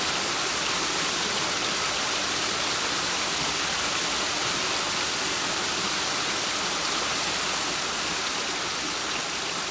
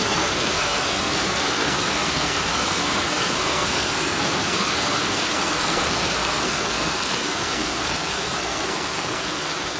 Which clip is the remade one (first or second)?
second